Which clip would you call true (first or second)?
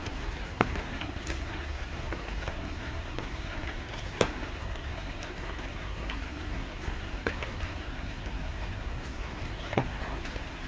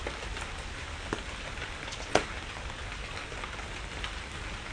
second